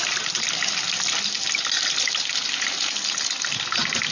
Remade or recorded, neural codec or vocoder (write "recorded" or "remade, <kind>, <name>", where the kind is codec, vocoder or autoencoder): recorded